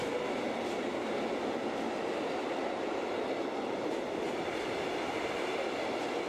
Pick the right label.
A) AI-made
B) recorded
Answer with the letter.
B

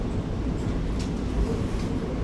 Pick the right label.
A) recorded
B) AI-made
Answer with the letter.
A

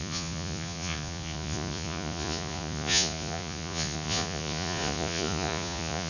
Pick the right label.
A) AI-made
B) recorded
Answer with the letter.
A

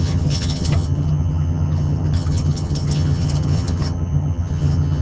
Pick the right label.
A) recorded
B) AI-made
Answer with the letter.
B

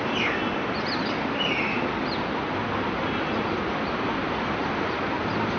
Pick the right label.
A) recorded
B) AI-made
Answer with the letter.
A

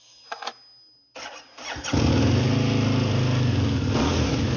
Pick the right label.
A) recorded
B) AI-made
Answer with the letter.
A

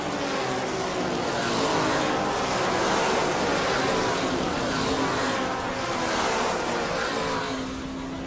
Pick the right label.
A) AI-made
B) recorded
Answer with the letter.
B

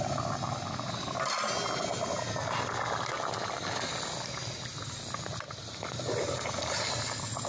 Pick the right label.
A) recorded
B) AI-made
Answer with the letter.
A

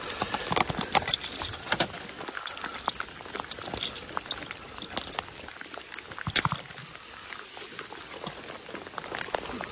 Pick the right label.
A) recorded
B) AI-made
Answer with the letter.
A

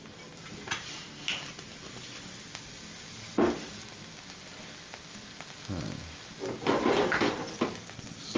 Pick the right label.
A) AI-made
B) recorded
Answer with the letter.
B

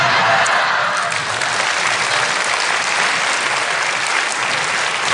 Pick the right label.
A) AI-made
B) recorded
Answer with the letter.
B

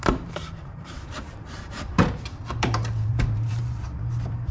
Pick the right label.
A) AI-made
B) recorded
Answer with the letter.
A